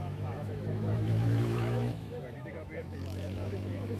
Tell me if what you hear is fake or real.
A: fake